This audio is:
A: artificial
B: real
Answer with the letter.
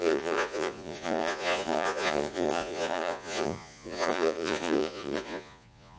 A